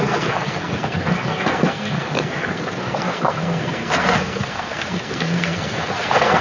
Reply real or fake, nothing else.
fake